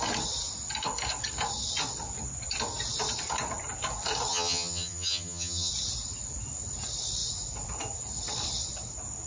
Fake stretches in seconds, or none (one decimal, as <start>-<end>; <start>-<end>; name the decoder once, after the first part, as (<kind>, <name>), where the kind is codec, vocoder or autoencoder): 4.3-5.7 (vocoder, HiFi-GAN)